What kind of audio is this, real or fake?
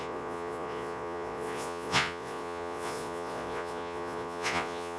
fake